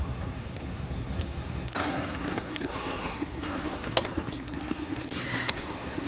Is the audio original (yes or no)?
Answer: no